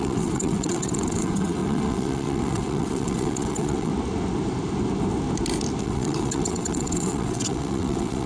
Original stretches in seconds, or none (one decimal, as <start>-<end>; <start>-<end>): 3.9-5.8